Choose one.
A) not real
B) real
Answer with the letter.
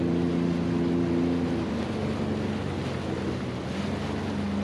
B